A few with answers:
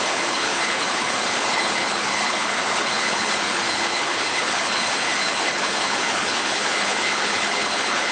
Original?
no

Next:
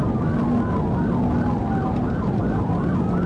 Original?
yes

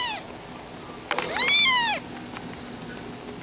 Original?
yes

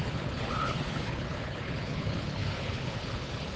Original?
no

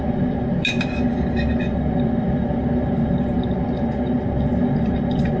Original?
yes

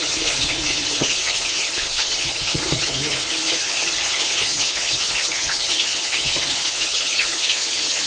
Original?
no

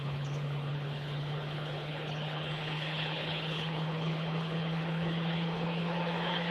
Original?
no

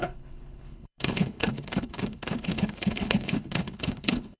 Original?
no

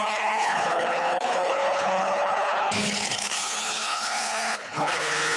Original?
no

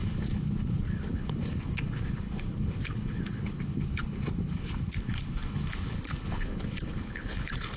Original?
no